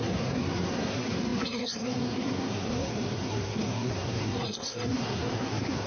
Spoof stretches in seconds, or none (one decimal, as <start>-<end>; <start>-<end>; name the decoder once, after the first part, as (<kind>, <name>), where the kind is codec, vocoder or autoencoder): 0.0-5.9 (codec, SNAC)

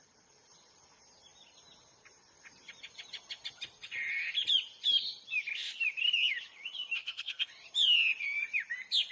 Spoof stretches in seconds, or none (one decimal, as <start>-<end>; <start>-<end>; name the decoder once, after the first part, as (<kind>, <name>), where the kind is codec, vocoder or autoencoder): 7.0-7.5 (codec, SNAC)

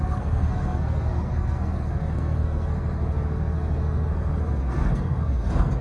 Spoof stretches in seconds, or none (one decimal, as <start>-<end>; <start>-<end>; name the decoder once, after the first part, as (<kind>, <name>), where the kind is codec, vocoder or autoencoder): 0.0-5.8 (codec, SNAC)

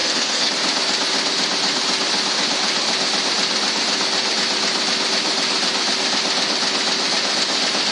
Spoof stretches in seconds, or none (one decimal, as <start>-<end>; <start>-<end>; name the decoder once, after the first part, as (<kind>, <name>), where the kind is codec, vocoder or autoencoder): 0.0-0.5 (codec, SNAC)

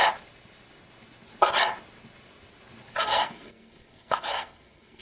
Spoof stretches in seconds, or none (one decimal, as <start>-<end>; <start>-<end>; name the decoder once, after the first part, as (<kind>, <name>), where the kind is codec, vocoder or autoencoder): 3.0-5.0 (codec, SNAC)

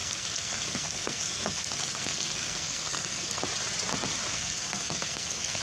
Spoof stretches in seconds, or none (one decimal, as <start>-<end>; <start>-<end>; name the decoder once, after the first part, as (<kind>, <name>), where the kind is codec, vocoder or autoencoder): 0.0-3.4 (codec, SNAC); 4.3-5.6

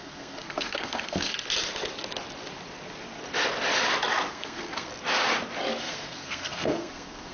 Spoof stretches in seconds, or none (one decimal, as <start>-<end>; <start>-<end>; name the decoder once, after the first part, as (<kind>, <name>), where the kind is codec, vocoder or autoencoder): 0.0-1.3 (codec, SNAC); 4.3-4.9; 5.8-7.3

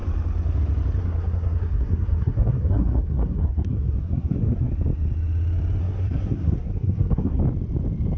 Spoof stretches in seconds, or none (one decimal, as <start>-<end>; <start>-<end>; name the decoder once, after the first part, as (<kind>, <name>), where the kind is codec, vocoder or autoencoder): 1.0-4.7 (codec, SNAC); 5.8-7.4